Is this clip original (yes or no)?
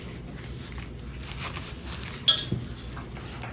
yes